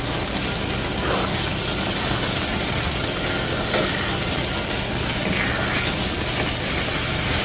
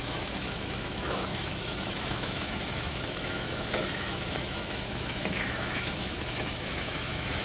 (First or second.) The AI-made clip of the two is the second